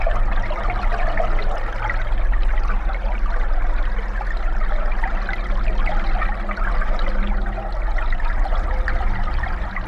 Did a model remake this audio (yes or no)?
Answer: no